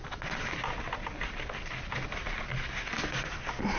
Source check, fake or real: real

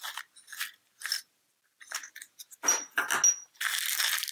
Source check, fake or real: real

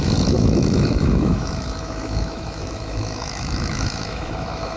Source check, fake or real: fake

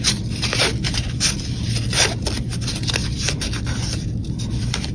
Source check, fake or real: real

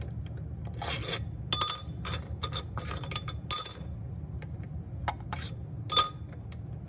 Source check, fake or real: real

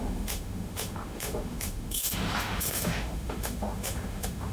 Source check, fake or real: fake